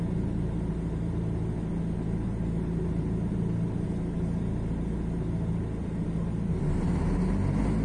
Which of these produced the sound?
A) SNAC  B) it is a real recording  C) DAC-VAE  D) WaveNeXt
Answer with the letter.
B